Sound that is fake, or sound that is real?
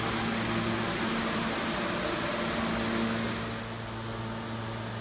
real